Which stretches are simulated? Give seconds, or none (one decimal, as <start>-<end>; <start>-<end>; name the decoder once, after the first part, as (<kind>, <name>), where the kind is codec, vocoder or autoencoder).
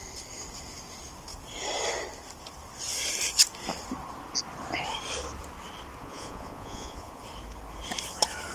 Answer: 6.0-7.2 (vocoder, Vocos)